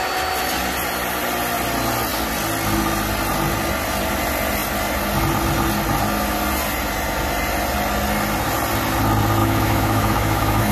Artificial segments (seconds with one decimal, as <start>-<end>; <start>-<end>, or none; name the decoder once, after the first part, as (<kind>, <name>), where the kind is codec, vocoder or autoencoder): 9.4-10.7 (autoencoder, DAC-VAE)